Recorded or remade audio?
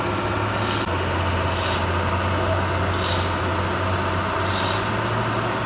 recorded